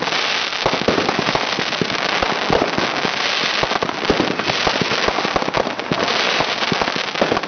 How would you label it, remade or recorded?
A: recorded